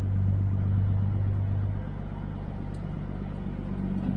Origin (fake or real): real